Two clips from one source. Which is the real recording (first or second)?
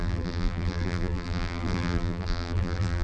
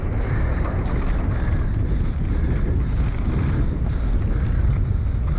second